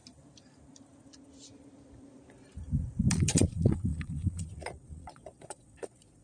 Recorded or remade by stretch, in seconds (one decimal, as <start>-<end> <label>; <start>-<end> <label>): 0.0-3.1 recorded; 3.1-6.2 remade